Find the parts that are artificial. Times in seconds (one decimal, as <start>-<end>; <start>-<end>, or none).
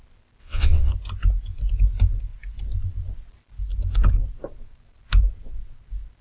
0.4-0.9